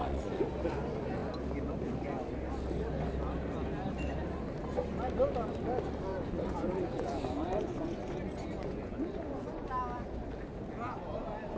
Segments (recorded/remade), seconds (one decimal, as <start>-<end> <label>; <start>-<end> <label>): 0.0-0.5 remade; 0.5-6.1 recorded; 6.1-9.7 remade; 9.7-11.6 recorded